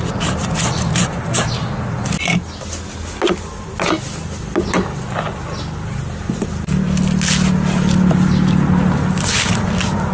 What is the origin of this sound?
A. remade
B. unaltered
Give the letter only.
B